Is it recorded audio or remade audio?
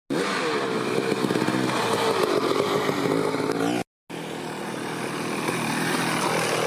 recorded